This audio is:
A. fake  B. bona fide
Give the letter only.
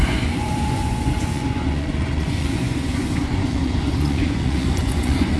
A